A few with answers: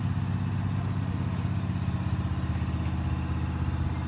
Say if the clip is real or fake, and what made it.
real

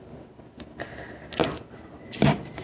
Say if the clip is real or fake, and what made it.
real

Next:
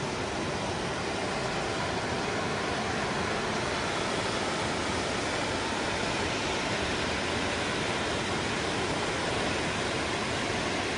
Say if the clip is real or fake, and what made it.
real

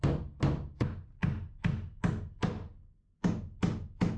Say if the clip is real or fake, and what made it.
real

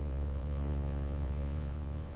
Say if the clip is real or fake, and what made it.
fake, vocoder, Vocos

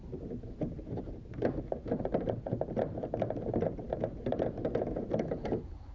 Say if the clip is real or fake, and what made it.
real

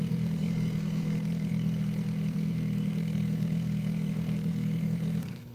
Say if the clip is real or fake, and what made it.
fake, codec, SNAC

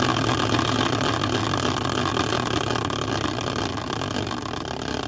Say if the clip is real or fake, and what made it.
real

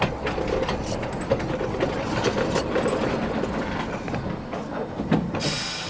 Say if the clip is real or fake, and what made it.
real